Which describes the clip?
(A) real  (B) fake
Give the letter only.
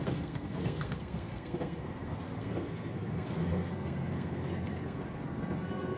B